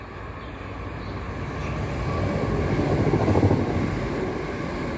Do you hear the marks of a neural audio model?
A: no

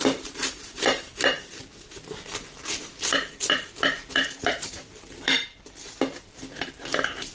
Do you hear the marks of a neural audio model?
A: yes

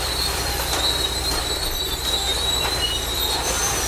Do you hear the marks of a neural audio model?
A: no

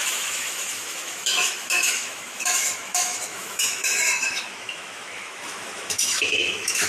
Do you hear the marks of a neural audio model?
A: yes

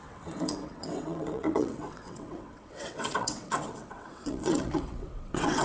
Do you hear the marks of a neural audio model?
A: yes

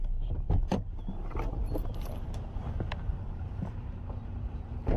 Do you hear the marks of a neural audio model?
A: yes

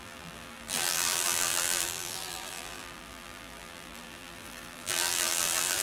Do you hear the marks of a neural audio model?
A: yes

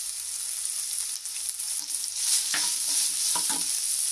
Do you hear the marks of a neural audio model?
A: no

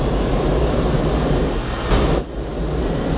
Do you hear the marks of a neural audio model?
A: no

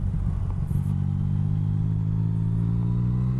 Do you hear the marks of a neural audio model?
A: no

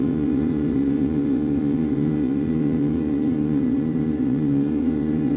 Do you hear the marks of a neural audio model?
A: yes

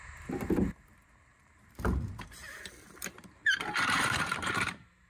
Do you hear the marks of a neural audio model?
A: yes